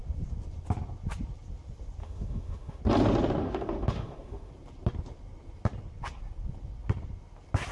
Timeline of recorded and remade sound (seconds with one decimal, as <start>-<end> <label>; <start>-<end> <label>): 0.0-2.0 recorded; 2.0-2.8 remade; 2.8-3.4 recorded; 3.4-4.5 remade; 4.5-7.7 recorded